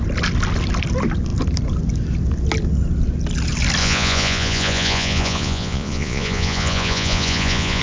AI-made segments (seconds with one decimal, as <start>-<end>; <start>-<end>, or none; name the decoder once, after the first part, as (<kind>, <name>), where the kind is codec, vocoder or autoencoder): 3.8-7.8 (vocoder, Vocos)